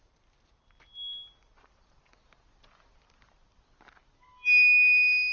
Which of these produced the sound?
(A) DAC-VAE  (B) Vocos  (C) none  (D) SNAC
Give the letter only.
C